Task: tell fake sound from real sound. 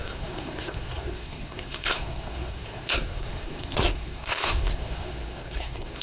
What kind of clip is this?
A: fake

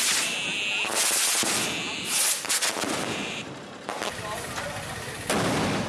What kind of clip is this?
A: real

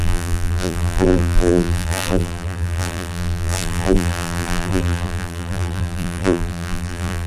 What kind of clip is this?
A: fake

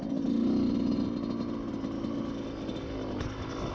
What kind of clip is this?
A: real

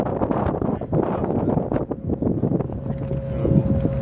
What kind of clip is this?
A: real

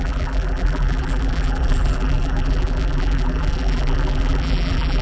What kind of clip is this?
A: fake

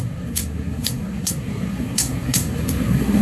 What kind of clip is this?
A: fake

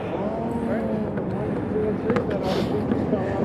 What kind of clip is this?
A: real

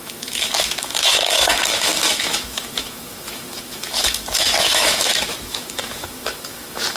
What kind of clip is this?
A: fake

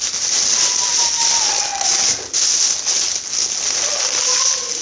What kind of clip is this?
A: real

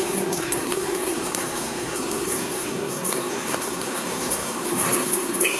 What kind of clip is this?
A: fake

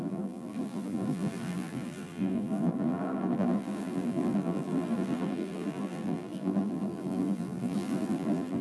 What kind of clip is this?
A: fake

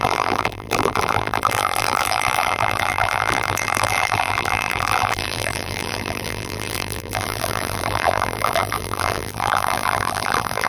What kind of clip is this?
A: fake